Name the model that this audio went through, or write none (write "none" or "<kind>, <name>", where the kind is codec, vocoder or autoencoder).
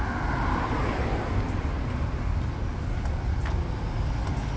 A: none